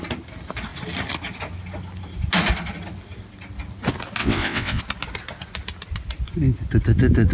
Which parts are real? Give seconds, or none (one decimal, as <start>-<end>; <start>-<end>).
0.0-4.2; 4.8-7.3